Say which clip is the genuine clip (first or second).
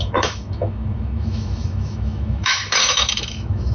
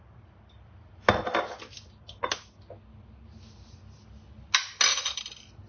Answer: second